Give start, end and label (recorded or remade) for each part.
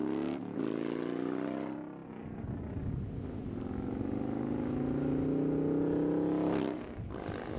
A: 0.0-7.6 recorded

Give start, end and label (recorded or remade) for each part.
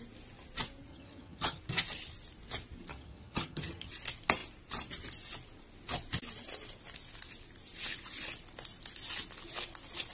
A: 0.0-0.9 recorded; 0.9-1.6 remade; 1.6-2.9 recorded; 2.9-3.9 remade; 3.9-10.1 recorded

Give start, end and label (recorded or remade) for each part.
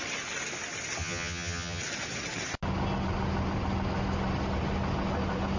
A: 0.0-1.0 recorded; 1.0-1.8 remade; 1.8-5.6 recorded